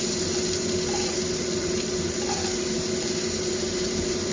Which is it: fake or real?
real